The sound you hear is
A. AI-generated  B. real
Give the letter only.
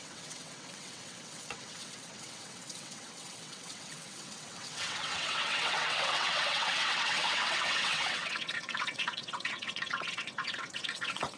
A